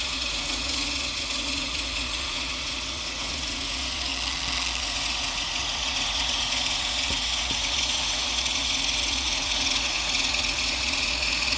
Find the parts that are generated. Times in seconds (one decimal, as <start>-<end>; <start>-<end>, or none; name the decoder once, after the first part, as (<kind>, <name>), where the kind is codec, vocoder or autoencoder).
0.0-4.1 (vocoder, Vocos); 4.8-11.6